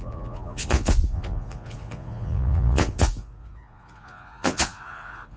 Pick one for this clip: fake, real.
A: fake